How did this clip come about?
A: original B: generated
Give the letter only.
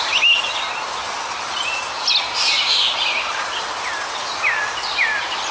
A